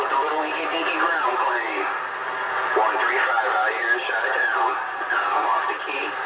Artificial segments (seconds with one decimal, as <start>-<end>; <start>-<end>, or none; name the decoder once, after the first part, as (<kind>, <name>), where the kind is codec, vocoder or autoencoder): 0.0-2.2 (vocoder, BigVGAN v2); 3.4-6.3